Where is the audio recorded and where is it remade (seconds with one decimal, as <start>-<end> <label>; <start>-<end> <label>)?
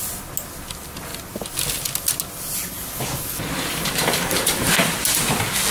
0.0-3.7 recorded; 3.7-5.3 remade; 5.3-5.7 recorded